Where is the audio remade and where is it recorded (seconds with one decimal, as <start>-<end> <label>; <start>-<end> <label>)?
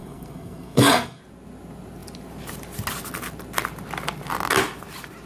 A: 0.0-1.2 remade; 1.2-5.3 recorded